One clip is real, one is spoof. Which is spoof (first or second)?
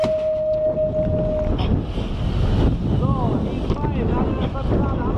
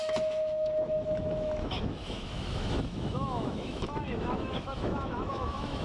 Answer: second